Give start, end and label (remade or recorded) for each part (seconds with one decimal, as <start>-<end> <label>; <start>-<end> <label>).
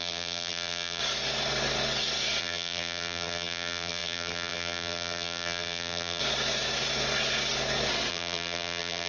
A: 0.0-1.0 remade; 1.0-2.4 recorded; 2.4-6.2 remade; 6.2-8.1 recorded; 8.1-9.1 remade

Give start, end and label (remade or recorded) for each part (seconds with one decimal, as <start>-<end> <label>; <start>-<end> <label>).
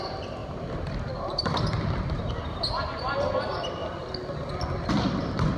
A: 0.0-0.4 recorded; 0.4-2.7 remade; 2.7-5.6 recorded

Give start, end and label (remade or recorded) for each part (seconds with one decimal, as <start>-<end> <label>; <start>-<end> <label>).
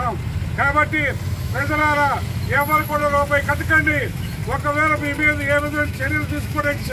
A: 0.0-1.4 recorded; 1.4-1.8 remade; 1.8-2.3 recorded; 2.3-3.0 remade; 3.0-3.5 recorded; 3.5-4.4 remade; 4.4-5.6 recorded; 5.6-6.9 remade